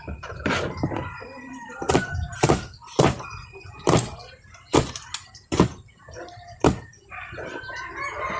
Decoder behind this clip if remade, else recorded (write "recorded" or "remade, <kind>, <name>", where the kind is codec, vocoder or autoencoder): remade, vocoder, BigVGAN v2